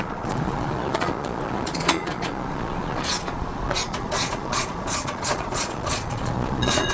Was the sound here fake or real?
fake